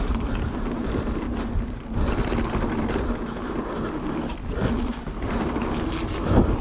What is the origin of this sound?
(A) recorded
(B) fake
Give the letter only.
A